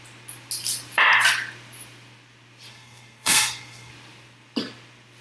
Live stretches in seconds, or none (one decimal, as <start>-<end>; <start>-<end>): 0.0-2.7; 3.9-5.2